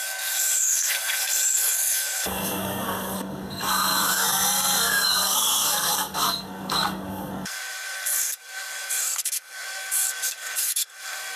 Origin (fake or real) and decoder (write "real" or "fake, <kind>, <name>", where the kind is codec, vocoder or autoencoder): fake, codec, SNAC